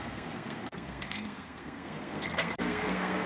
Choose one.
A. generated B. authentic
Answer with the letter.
A